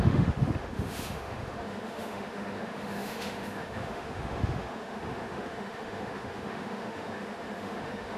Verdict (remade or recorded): remade